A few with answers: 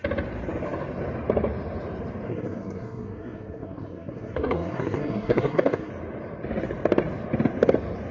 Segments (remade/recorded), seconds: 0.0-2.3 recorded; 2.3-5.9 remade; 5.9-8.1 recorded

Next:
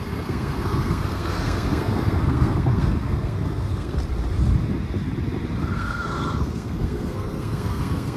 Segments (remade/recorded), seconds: 0.0-4.0 remade; 4.0-5.6 recorded; 5.6-8.2 remade

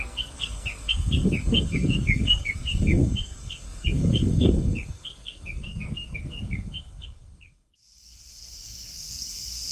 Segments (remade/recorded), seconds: 0.0-9.7 remade

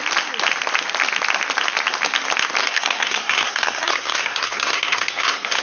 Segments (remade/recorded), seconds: 0.0-2.6 recorded; 2.6-5.6 remade

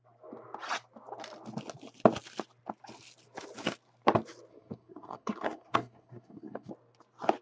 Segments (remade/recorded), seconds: 0.0-4.5 recorded; 4.5-6.7 remade; 6.7-7.4 recorded

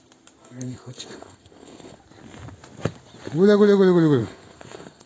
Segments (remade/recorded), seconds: 0.0-0.4 recorded; 0.4-2.0 remade; 2.0-4.2 recorded; 4.2-5.1 remade

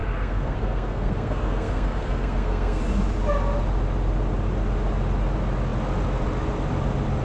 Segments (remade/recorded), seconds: 0.0-2.8 remade; 2.8-7.2 recorded

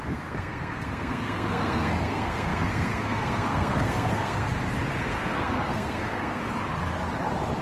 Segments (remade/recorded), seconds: 0.0-4.5 remade; 4.5-5.0 recorded; 5.0-6.4 remade; 6.4-7.6 recorded